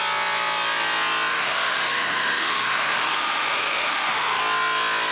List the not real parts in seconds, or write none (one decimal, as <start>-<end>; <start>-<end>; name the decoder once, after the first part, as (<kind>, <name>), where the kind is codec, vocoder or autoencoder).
1.3-4.4 (autoencoder, DAC-VAE)